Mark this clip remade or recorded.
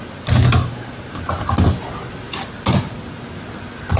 recorded